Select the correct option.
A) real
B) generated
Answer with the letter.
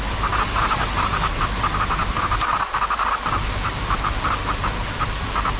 A